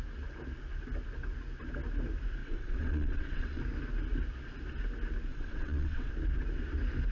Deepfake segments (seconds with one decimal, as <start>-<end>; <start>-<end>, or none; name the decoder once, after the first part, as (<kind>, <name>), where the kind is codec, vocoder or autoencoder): 2.4-3.6 (vocoder, WaveNeXt); 5.3-6.1